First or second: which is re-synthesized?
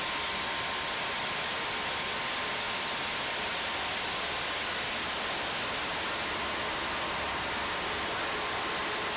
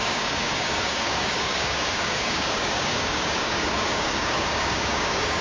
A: second